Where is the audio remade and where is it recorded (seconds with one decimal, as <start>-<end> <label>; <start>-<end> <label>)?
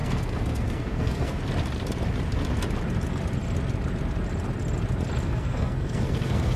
0.0-1.4 remade; 1.4-5.2 recorded; 5.2-6.6 remade